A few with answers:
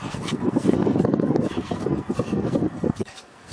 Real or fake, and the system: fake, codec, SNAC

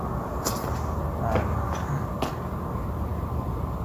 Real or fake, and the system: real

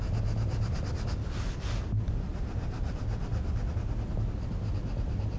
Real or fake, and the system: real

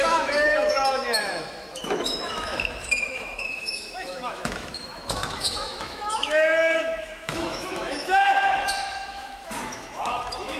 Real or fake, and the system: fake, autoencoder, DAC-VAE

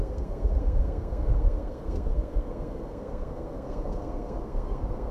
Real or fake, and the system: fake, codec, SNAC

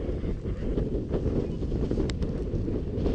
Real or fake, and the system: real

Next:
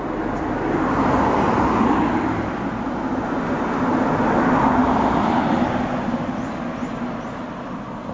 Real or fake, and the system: real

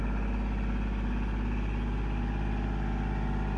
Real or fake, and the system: real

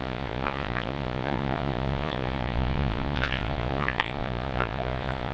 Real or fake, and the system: fake, vocoder, Vocos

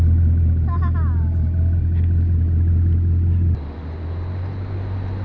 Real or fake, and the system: real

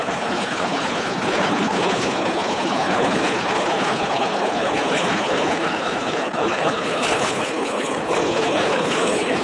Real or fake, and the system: fake, codec, HILCodec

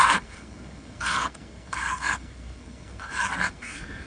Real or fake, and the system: fake, codec, SNAC